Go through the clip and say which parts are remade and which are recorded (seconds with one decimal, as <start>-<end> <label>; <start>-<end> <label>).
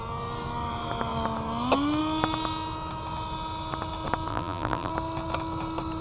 0.0-4.3 recorded; 4.3-4.9 remade; 4.9-6.0 recorded